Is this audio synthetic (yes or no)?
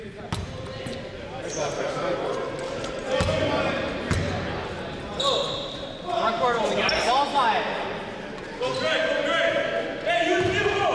no